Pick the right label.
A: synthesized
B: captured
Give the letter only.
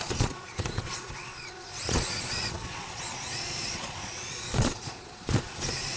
A